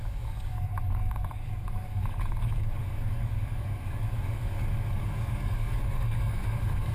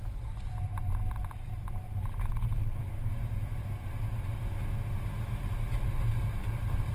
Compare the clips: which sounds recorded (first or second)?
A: second